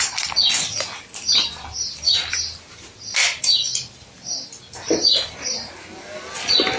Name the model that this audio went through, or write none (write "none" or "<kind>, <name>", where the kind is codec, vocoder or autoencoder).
none